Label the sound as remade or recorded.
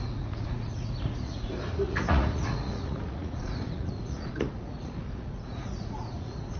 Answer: remade